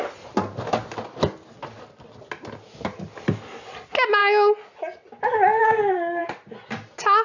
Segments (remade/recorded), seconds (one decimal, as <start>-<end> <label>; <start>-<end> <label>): 0.0-5.6 recorded; 5.6-6.2 remade; 6.2-7.2 recorded

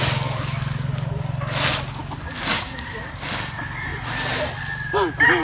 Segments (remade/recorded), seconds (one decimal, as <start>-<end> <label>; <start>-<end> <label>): 0.0-2.5 recorded; 2.5-3.1 remade; 3.1-5.4 recorded

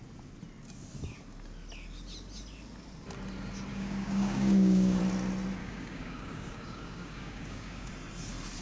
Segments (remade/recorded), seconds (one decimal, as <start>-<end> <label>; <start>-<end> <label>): 0.0-3.7 recorded; 3.7-5.0 remade; 5.0-5.6 recorded; 5.6-7.9 remade; 7.9-8.6 recorded